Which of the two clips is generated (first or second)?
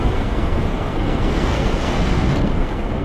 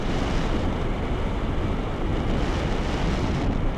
first